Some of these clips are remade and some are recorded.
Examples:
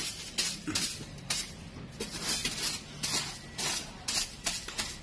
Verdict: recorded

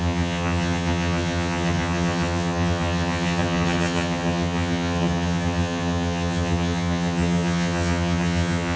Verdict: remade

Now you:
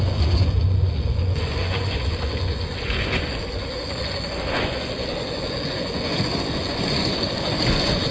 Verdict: remade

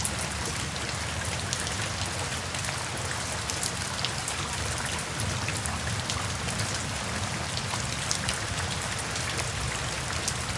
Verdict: recorded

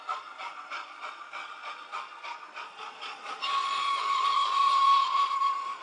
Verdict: remade